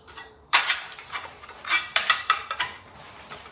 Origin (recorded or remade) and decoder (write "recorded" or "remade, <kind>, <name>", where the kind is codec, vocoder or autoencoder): remade, vocoder, BigVGAN v2